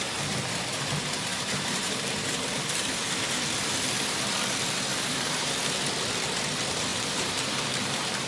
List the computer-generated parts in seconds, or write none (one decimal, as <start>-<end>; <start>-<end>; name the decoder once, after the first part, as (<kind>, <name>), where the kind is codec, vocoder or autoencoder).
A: 1.3-3.2 (vocoder, BigVGAN v2); 4.9-5.5; 6.9-8.3